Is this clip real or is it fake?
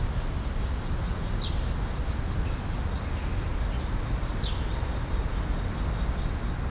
real